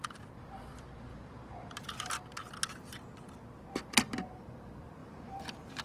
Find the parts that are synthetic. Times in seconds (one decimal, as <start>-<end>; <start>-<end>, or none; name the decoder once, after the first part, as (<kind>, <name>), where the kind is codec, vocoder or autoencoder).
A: 1.1-2.1 (vocoder, BigVGAN v2); 5.0-5.8